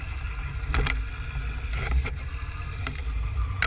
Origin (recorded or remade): recorded